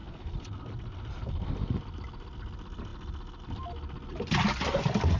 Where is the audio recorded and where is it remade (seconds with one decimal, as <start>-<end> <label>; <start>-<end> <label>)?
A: 0.0-5.2 recorded